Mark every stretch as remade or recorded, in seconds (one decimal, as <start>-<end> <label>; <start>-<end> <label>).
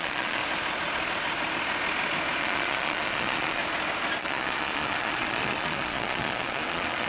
0.0-0.4 remade; 0.4-2.4 recorded; 2.4-3.6 remade; 3.6-4.2 recorded; 4.2-7.1 remade